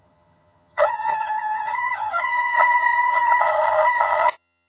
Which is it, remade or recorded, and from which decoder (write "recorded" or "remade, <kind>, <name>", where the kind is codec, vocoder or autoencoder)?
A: remade, vocoder, HiFi-GAN